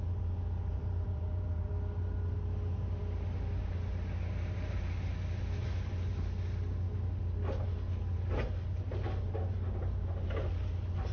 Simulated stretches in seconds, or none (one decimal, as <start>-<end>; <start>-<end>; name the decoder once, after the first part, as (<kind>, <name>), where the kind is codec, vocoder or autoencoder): 0.7-1.7 (vocoder, BigVGAN v2)